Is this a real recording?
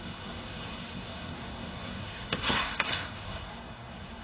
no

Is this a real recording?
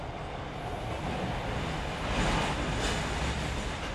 yes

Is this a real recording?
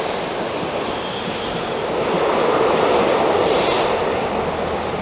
yes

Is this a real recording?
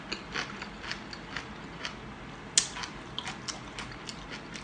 yes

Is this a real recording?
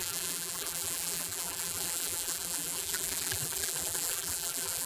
no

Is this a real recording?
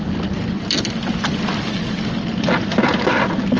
yes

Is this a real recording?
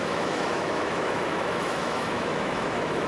no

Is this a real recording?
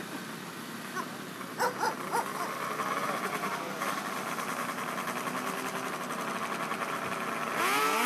yes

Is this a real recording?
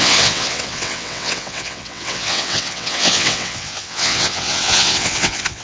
no